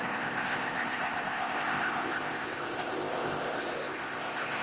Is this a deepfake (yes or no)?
yes